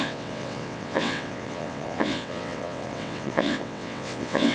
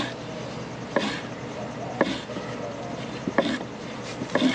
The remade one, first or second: first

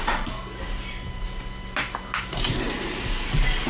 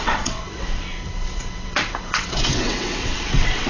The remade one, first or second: second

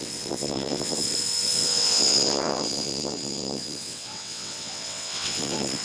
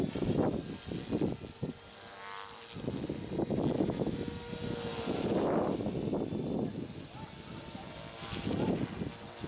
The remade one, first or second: first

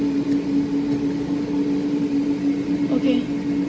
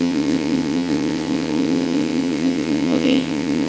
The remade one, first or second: second